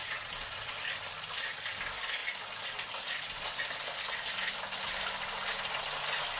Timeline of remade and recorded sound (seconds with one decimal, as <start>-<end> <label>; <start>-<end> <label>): 0.0-0.7 remade; 0.7-6.4 recorded